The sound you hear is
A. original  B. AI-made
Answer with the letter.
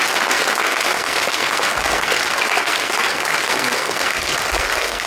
B